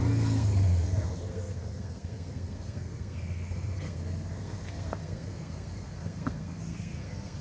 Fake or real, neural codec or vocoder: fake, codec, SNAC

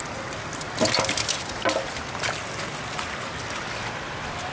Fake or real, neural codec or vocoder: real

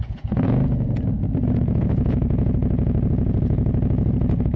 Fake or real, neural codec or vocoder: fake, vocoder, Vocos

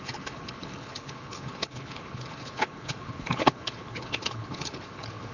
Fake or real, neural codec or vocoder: fake, codec, HILCodec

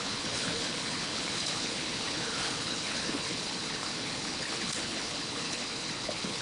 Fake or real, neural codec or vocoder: fake, codec, HILCodec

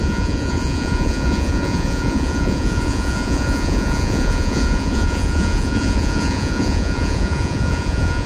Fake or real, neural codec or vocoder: fake, vocoder, Vocos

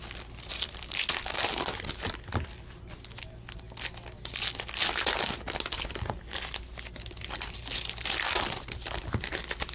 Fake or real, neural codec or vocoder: real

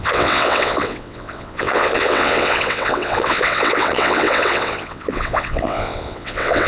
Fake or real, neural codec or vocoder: fake, vocoder, WaveNeXt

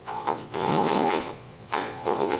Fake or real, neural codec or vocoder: fake, vocoder, Vocos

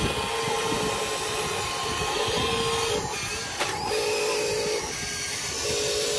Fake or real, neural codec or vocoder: real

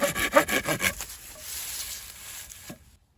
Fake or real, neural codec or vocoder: real